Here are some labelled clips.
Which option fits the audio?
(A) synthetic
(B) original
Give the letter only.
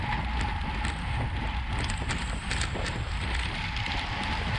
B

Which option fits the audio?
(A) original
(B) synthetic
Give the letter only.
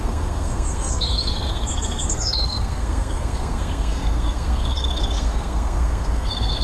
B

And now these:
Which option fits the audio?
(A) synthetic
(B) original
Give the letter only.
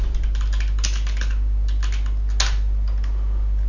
B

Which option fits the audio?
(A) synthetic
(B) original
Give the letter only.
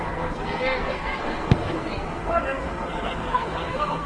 A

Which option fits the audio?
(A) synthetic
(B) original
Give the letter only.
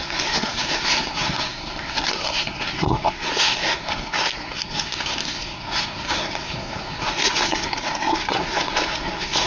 A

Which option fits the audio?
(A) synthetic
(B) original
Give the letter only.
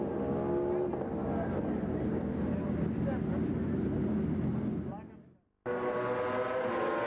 B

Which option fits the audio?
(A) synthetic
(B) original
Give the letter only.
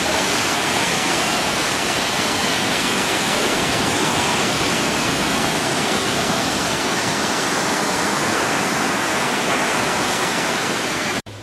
A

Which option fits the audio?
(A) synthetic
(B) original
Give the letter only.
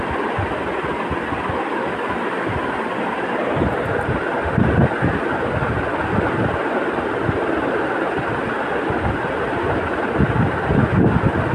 B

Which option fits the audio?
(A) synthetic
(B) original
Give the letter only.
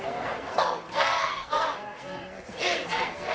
A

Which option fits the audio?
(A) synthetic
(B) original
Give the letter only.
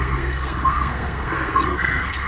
A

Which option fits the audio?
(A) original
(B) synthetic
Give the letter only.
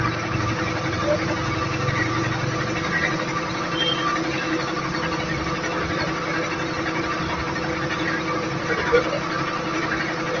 A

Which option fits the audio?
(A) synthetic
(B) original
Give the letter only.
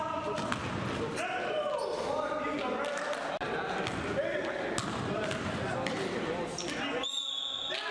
B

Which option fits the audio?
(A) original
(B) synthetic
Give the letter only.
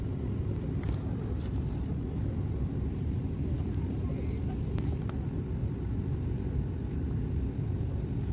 A